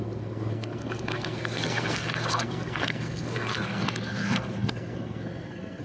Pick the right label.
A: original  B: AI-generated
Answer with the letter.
B